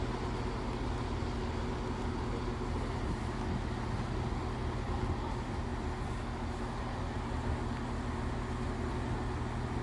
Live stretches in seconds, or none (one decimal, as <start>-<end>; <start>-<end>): 0.0-9.8